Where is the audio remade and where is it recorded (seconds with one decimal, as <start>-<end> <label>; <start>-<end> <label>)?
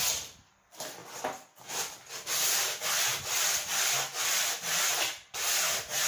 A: 0.0-6.1 recorded